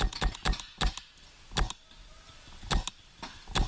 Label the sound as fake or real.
real